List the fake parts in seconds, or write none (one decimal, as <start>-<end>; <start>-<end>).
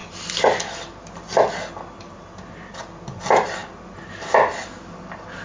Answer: none